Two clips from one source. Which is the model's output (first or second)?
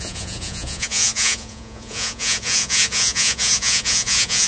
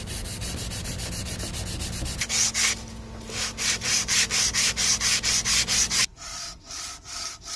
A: first